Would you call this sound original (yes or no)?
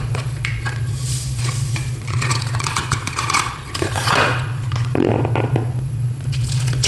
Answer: no